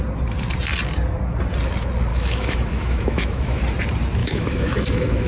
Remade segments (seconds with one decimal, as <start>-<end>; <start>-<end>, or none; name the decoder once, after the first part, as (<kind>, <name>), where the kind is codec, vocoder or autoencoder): 2.1-3.6 (autoencoder, DAC-VAE); 4.2-5.3